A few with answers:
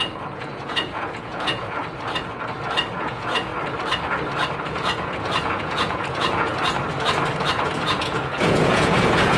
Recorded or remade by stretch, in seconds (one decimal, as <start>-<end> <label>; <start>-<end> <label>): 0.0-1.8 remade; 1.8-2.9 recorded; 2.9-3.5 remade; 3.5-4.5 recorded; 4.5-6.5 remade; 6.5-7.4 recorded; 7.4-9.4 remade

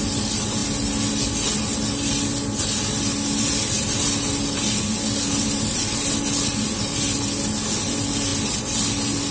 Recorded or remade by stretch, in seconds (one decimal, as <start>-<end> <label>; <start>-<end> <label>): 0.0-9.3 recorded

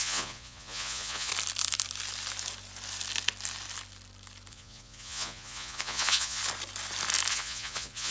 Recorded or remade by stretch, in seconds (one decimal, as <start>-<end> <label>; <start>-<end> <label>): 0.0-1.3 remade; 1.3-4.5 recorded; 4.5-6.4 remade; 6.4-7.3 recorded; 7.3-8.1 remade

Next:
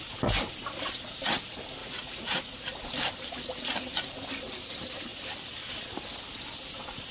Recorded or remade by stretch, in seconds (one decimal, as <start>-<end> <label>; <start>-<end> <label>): 0.0-1.8 recorded; 1.8-2.6 remade; 2.6-7.1 recorded